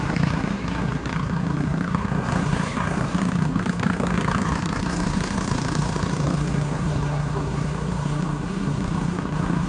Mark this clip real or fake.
fake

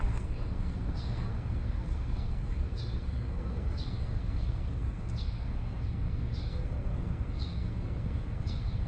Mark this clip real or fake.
fake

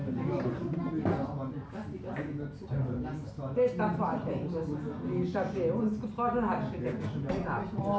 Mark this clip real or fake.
real